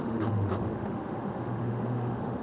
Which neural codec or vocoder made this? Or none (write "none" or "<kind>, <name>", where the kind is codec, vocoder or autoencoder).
autoencoder, DAC-VAE